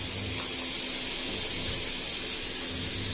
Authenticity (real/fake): real